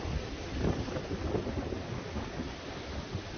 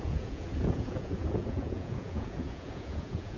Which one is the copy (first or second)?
second